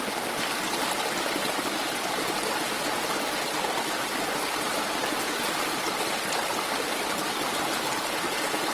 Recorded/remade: recorded